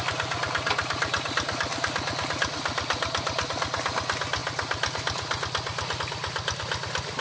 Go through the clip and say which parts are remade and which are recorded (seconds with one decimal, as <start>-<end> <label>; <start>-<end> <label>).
0.0-4.4 recorded; 4.4-6.0 remade; 6.0-7.2 recorded